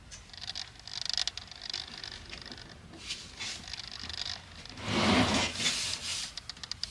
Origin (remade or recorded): recorded